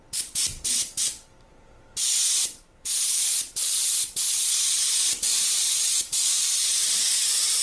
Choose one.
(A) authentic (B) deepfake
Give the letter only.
B